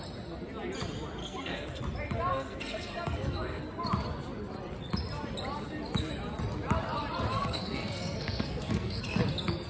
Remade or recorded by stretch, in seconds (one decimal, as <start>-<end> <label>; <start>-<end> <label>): 0.0-1.2 recorded; 1.2-1.8 remade; 1.8-2.3 recorded; 2.3-3.6 remade; 3.6-7.3 recorded; 7.3-9.0 remade; 9.0-9.7 recorded